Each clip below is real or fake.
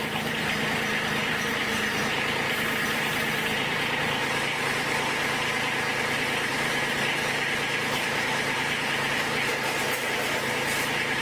fake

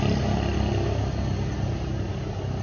real